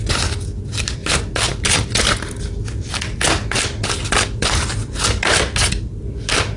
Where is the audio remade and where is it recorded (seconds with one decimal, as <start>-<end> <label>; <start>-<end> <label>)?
0.0-6.6 recorded